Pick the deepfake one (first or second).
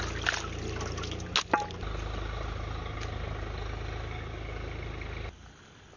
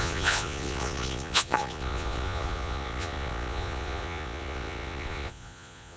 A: second